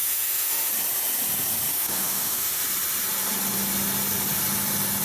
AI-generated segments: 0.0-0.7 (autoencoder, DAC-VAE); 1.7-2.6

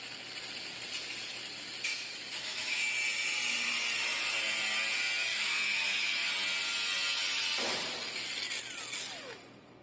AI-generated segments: 1.9-2.9 (autoencoder, DAC-VAE); 5.3-6.3

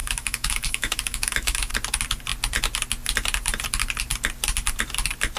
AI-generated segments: 0.0-1.7 (autoencoder, DAC-VAE)

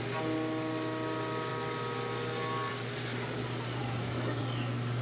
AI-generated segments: 3.8-4.4 (autoencoder, DAC-VAE)

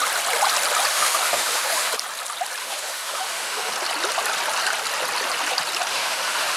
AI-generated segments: 0.9-1.9 (autoencoder, DAC-VAE); 2.6-3.7; 5.9-6.6